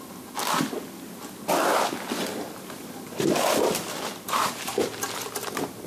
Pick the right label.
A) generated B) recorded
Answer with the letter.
B